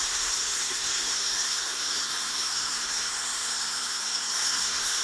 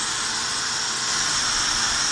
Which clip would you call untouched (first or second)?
second